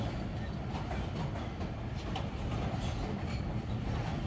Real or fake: real